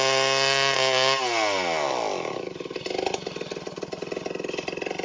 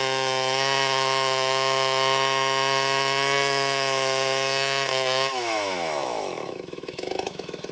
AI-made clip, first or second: second